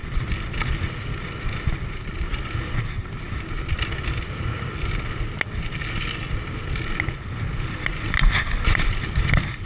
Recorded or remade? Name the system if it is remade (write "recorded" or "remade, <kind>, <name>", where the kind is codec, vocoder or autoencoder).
recorded